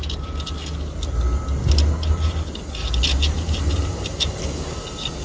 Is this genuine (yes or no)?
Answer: yes